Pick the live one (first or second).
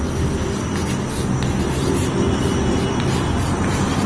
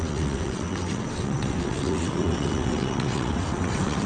first